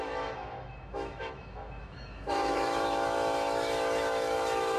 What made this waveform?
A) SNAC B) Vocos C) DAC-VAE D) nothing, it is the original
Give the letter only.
C